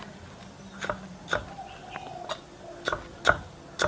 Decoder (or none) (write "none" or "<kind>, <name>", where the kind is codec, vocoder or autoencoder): none